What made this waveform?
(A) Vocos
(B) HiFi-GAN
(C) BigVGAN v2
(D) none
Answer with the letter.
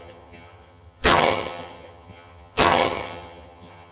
B